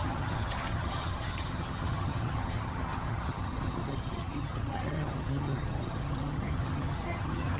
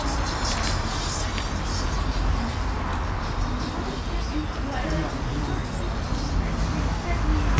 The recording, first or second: second